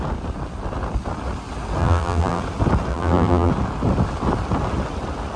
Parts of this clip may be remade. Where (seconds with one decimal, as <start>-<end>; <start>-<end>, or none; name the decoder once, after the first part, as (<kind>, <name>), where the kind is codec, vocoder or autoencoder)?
1.8-2.4 (vocoder, BigVGAN v2); 2.9-3.5